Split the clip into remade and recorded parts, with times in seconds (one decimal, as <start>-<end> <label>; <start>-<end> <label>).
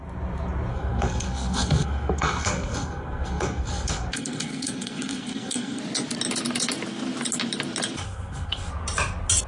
0.0-0.7 recorded; 0.7-5.8 remade; 5.8-8.0 recorded; 8.0-8.7 remade; 8.7-9.5 recorded